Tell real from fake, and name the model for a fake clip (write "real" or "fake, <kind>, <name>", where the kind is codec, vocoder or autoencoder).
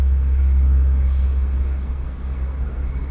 fake, codec, SNAC